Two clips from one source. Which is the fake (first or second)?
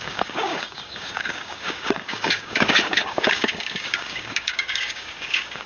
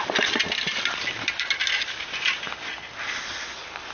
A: first